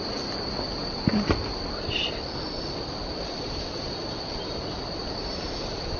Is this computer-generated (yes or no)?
no